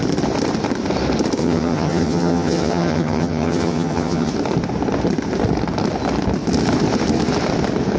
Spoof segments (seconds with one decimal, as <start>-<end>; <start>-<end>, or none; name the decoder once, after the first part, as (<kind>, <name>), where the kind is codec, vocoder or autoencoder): 1.4-4.3 (vocoder, HiFi-GAN)